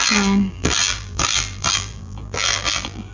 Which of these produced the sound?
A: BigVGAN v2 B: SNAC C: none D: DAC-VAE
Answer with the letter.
A